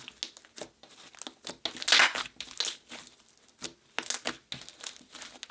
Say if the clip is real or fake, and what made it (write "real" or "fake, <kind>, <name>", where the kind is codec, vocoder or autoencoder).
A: real